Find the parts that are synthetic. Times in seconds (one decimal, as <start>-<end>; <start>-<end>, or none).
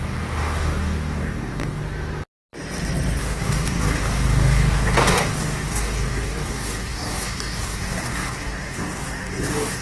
0.0-1.8; 3.2-9.8